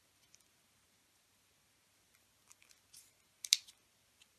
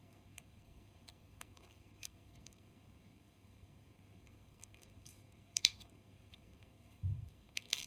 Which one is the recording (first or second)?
first